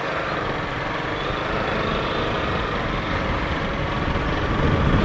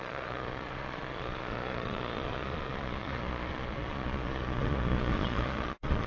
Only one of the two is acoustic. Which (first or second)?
first